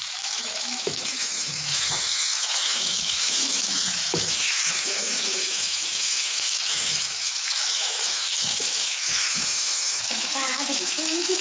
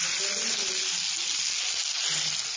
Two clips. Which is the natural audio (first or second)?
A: second